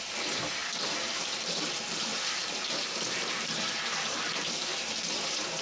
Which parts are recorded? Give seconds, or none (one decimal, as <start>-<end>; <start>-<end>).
0.0-0.6; 1.6-2.1; 4.9-5.6